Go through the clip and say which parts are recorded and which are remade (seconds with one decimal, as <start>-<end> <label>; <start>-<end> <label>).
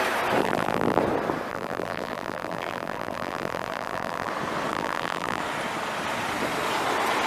0.0-0.4 recorded; 0.4-1.0 remade; 1.0-1.5 recorded; 1.5-4.3 remade; 4.3-4.7 recorded; 4.7-5.4 remade; 5.4-7.3 recorded